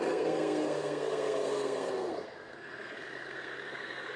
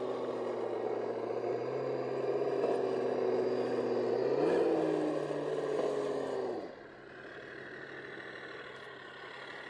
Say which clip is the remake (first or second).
first